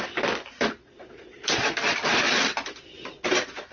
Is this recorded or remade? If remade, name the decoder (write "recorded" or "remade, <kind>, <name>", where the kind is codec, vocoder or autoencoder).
recorded